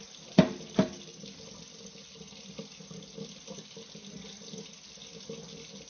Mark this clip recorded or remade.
recorded